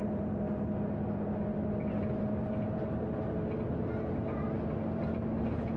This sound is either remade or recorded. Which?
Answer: recorded